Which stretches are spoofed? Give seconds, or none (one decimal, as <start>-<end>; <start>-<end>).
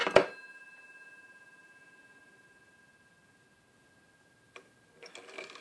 none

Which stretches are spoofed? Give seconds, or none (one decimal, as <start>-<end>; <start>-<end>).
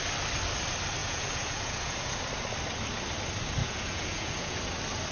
1.0-2.2; 3.6-4.6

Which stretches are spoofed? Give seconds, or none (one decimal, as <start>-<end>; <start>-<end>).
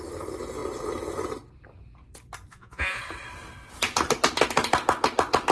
2.5-3.0